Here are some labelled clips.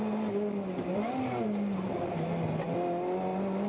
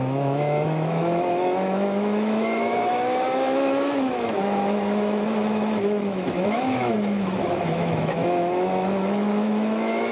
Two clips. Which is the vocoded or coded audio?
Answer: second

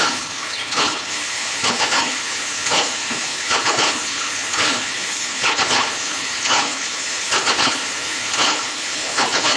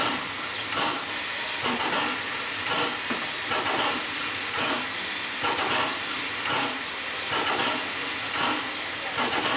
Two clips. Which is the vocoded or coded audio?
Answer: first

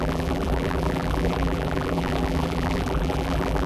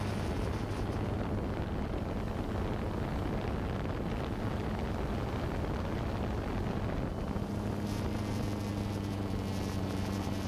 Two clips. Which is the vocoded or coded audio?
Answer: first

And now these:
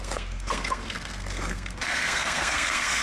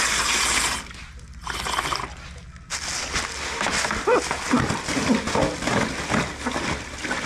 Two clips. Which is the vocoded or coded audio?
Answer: first